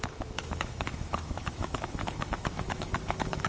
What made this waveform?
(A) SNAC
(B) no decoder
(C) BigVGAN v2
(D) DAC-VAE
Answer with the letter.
D